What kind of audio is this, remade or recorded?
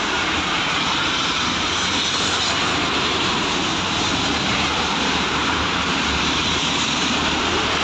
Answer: remade